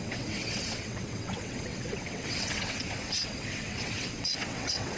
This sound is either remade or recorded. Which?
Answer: remade